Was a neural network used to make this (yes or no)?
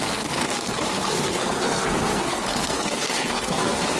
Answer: yes